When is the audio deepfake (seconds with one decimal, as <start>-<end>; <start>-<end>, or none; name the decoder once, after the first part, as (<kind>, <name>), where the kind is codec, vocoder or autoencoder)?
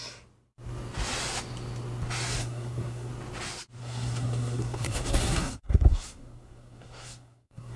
2.4-3.1 (codec, SNAC); 3.8-7.8